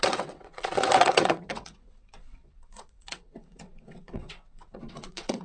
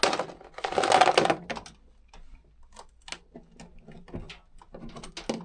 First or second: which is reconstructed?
first